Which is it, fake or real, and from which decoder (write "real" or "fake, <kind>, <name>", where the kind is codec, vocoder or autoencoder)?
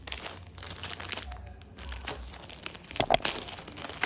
real